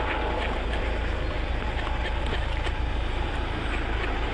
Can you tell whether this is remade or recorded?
recorded